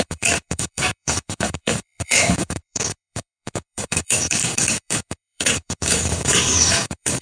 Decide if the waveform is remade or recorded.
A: remade